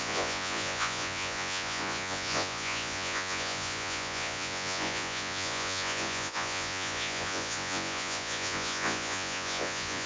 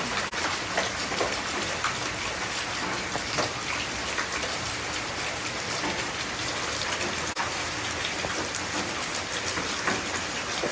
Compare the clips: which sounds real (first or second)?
second